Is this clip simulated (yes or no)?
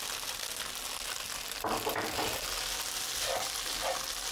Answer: no